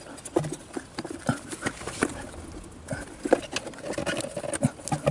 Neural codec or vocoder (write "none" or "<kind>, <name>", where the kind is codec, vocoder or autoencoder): none